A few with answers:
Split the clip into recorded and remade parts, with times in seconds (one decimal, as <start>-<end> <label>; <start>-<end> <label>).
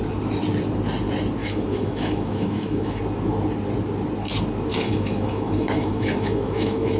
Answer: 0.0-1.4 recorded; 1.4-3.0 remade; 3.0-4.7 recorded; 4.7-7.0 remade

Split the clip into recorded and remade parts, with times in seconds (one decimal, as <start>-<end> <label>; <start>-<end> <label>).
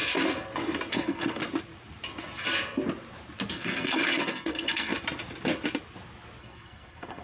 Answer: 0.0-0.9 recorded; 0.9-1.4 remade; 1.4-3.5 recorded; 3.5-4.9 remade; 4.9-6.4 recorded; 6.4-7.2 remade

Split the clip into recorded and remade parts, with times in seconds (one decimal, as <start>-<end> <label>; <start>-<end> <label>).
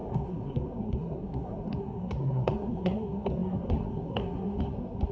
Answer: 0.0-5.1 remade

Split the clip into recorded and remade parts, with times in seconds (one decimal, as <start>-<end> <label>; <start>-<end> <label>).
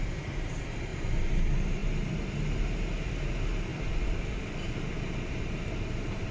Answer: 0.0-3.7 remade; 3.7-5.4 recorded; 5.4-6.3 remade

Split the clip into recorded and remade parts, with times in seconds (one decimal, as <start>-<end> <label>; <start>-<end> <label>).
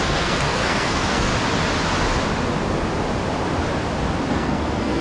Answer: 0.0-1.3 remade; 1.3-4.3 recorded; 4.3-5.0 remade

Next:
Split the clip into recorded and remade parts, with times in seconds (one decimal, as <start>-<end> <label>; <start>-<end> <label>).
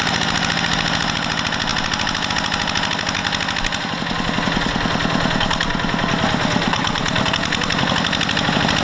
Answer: 0.0-8.8 recorded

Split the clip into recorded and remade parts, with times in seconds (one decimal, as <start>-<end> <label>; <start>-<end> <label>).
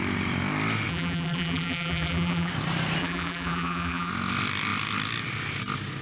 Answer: 0.0-0.9 recorded; 0.9-2.5 remade; 2.5-3.0 recorded; 3.0-4.1 remade; 4.1-6.0 recorded